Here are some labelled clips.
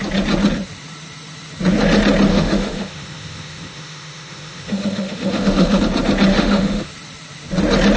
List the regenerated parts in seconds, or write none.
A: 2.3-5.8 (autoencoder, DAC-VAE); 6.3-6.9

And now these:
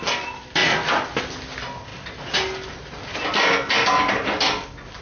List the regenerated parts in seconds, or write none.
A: none